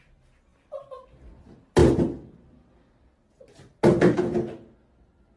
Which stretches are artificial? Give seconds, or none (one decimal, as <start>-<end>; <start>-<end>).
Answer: none